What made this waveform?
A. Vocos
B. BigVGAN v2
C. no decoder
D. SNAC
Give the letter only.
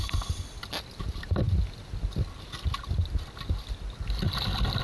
C